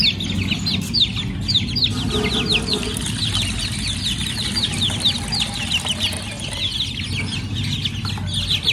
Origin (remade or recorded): recorded